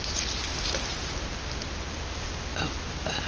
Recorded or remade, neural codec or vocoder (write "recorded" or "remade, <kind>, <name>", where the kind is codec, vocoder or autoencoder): recorded